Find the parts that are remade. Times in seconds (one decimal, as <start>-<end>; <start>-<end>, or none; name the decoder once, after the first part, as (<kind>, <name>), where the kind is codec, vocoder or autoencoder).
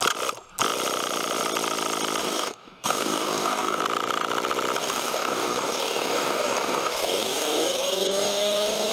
2.2-3.8 (codec, DAC); 4.8-8.9